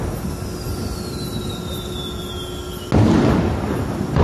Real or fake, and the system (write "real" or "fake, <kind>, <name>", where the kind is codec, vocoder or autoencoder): real